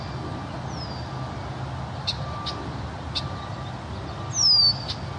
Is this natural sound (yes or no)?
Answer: yes